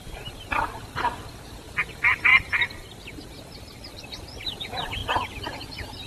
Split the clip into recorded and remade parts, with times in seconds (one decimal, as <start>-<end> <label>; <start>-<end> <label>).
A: 0.0-2.3 remade; 2.3-4.6 recorded; 4.6-6.1 remade

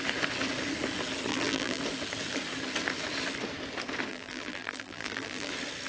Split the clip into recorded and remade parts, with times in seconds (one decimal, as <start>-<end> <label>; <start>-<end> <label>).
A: 0.0-1.3 recorded; 1.3-1.8 remade; 1.8-4.1 recorded; 4.1-5.5 remade; 5.5-5.9 recorded

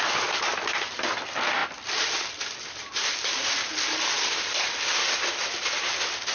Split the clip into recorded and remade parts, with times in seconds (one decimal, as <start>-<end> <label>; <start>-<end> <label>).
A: 0.0-6.3 remade

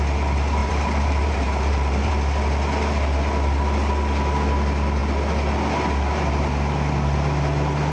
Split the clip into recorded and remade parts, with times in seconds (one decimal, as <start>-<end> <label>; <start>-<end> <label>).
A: 0.0-0.6 recorded; 0.6-2.1 remade; 2.1-7.9 recorded

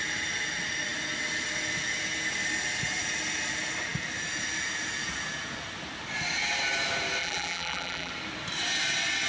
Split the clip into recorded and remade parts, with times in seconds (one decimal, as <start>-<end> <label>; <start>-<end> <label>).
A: 0.0-7.2 recorded; 7.2-8.1 remade; 8.1-9.3 recorded

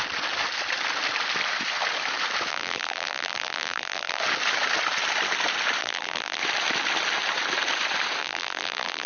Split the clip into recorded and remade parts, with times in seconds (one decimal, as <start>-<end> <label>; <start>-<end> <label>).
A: 0.0-2.5 recorded; 2.5-4.2 remade; 4.2-5.8 recorded; 5.8-6.4 remade; 6.4-8.2 recorded; 8.2-9.1 remade

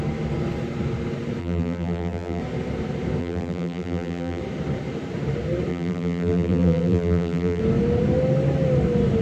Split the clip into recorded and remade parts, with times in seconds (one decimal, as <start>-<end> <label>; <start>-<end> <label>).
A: 0.0-1.4 recorded; 1.4-2.4 remade; 2.4-3.2 recorded; 3.2-4.4 remade; 4.4-5.7 recorded; 5.7-7.6 remade; 7.6-9.2 recorded